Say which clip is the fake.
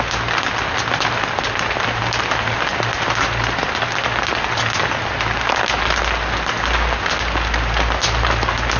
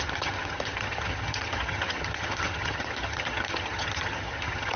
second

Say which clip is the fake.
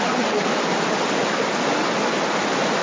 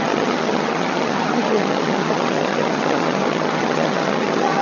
second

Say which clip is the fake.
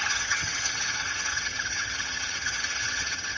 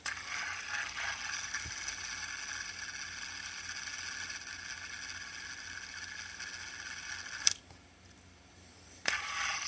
first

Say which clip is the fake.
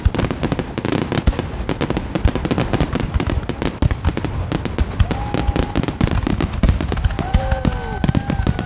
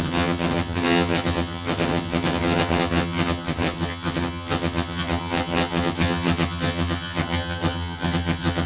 second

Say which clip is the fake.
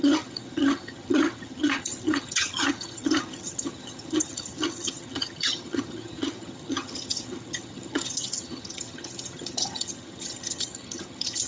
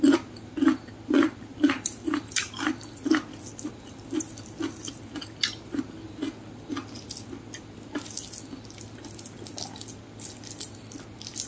first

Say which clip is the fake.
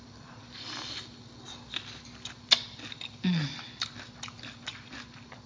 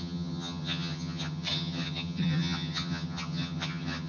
second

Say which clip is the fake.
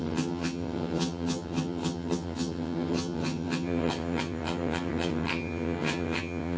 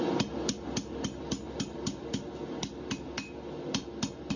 first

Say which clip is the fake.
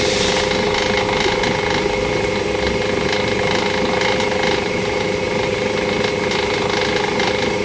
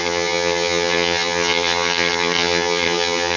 second